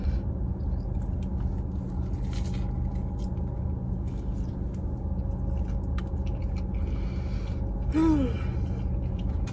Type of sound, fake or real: real